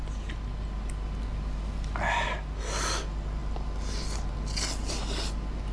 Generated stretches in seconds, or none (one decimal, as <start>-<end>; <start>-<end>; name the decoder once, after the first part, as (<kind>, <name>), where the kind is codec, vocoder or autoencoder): none